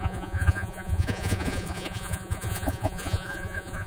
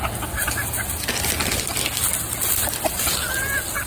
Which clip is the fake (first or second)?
first